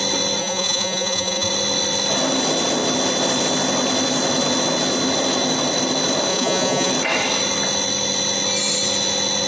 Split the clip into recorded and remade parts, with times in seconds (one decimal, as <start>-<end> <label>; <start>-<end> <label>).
0.0-0.4 recorded; 0.4-1.5 remade; 1.5-6.3 recorded; 6.3-6.9 remade; 6.9-9.5 recorded